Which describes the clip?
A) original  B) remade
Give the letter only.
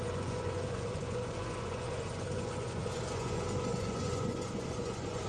B